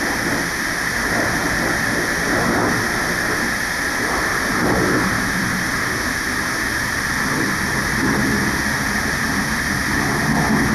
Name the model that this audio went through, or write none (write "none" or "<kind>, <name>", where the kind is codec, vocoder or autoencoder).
none